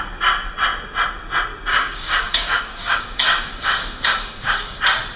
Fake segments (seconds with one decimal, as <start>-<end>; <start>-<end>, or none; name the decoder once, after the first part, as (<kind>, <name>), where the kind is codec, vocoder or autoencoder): 1.7-4.8 (codec, DAC)